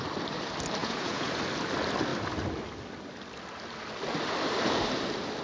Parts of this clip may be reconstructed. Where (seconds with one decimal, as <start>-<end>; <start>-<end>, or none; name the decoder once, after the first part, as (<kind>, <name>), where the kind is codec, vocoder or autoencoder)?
0.8-1.3 (vocoder, Vocos)